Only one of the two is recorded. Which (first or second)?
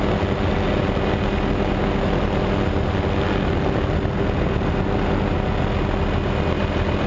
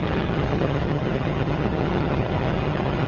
first